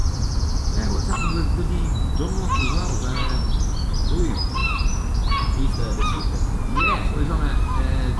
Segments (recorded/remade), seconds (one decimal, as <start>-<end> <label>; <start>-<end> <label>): 0.0-8.2 recorded